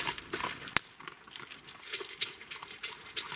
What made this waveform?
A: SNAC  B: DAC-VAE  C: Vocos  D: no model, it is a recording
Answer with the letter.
D